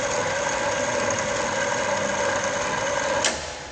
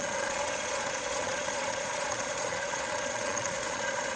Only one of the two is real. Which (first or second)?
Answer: first